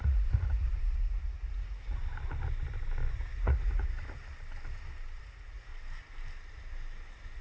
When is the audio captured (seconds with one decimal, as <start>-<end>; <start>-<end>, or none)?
2.0-3.1; 4.0-5.2; 5.7-7.4

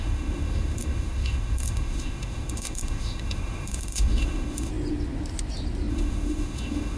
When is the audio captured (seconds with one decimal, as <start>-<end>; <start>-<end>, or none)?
4.7-5.9

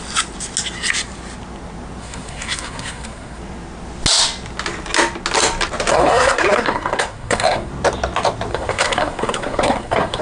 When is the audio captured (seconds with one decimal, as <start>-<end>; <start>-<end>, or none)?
0.0-2.0; 3.4-5.9; 7.7-8.5

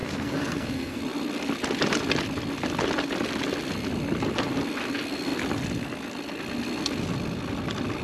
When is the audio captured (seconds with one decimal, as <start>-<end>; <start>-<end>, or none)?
1.0-8.0

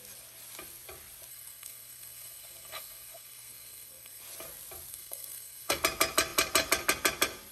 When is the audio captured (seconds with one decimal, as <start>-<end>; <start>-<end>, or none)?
0.0-1.3; 4.2-4.9; 5.8-7.5